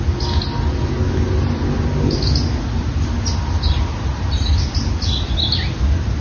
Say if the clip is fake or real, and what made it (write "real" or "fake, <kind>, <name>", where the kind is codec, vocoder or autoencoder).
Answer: real